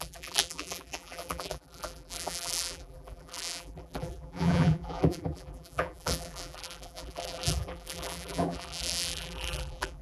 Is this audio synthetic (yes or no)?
yes